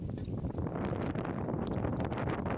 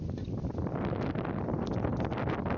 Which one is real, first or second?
second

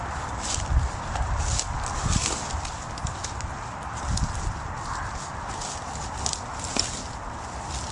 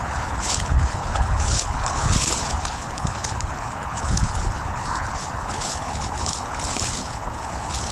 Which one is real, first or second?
first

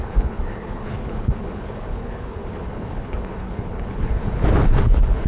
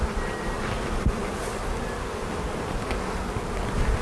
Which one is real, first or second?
second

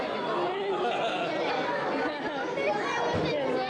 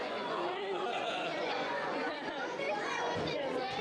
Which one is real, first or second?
first